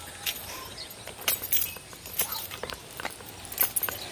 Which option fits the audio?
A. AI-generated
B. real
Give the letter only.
B